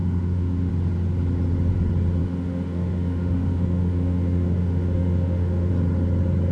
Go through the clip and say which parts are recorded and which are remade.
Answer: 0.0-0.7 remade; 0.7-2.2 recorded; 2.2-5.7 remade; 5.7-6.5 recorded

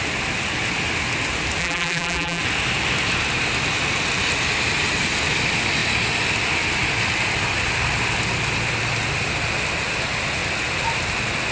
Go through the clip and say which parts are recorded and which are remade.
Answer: 0.0-1.6 recorded; 1.6-2.4 remade; 2.4-11.5 recorded

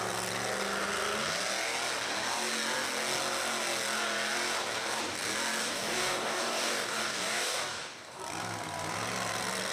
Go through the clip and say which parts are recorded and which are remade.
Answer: 0.0-5.6 recorded; 5.6-8.2 remade; 8.2-9.7 recorded

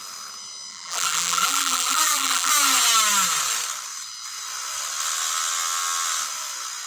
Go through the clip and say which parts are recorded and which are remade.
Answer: 0.0-0.7 recorded; 0.7-2.5 remade; 2.5-6.9 recorded

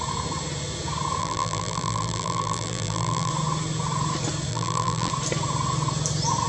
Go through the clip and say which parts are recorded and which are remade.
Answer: 0.0-1.2 recorded; 1.2-3.3 remade; 3.3-4.5 recorded; 4.5-5.1 remade; 5.1-6.5 recorded

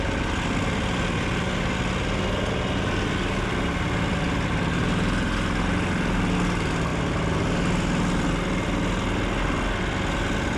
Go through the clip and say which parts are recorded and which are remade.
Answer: 0.0-10.6 recorded

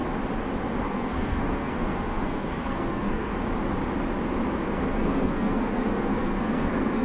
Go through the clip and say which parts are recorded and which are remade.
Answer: 0.0-0.8 recorded; 0.8-3.3 remade; 3.3-4.7 recorded; 4.7-7.0 remade

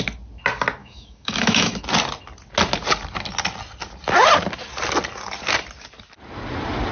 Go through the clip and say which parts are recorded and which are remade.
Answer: 0.0-0.8 recorded; 0.8-1.8 remade; 1.8-6.9 recorded